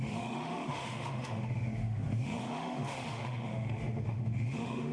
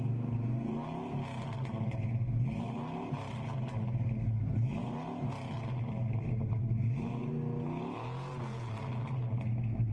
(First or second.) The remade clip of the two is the first